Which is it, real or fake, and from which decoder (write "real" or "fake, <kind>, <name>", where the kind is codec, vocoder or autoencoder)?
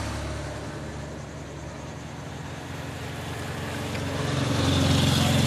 real